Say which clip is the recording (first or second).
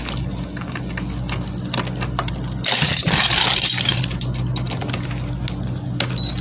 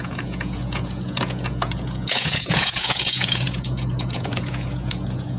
first